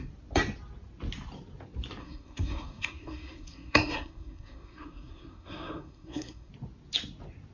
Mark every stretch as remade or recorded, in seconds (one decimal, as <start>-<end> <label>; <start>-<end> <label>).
0.0-2.0 recorded; 2.0-6.5 remade; 6.5-7.5 recorded